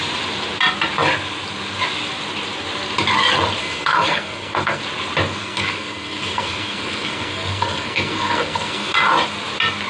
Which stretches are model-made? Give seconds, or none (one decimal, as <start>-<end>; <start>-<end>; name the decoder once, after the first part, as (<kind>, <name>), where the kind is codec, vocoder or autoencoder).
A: 3.6-4.8 (codec, SNAC); 5.4-8.9